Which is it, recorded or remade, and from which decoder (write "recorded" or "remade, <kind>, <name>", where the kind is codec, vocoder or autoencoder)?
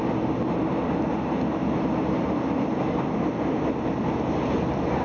recorded